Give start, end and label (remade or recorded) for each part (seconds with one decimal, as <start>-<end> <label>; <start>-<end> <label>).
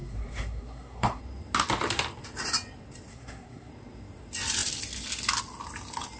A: 0.0-1.2 remade; 1.2-3.1 recorded; 3.1-3.7 remade; 3.7-6.2 recorded